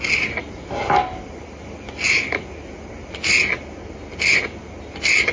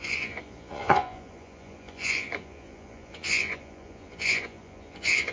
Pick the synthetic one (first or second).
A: second